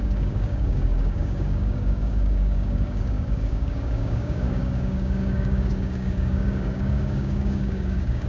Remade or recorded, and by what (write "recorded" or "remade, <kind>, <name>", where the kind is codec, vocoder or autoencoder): remade, codec, DAC